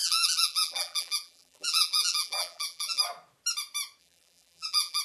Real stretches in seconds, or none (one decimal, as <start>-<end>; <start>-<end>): 3.0-4.0